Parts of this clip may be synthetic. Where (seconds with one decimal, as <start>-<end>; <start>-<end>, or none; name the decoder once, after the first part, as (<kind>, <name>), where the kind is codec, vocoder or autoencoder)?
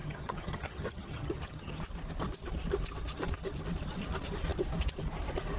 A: 0.0-1.8 (vocoder, HiFi-GAN)